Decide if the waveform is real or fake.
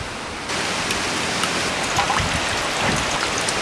real